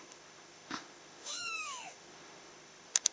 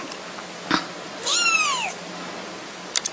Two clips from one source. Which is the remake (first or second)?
first